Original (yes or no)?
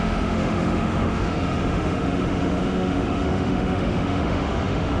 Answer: no